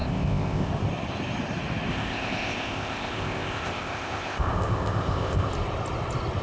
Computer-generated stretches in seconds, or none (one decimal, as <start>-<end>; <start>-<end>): 0.0-0.7; 1.9-5.5